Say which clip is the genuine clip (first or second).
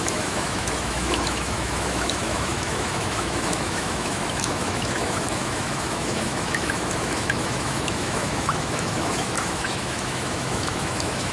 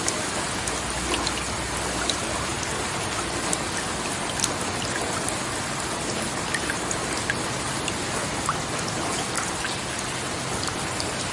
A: second